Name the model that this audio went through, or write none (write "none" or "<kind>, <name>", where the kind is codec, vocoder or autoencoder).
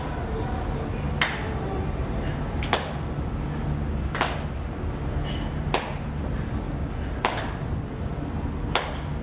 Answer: none